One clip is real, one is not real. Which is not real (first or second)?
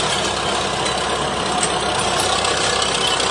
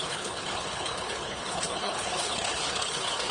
second